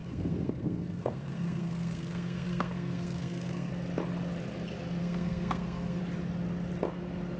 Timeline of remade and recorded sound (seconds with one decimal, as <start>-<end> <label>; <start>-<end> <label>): 0.0-3.7 remade; 3.7-5.0 recorded; 5.0-6.0 remade; 6.0-7.4 recorded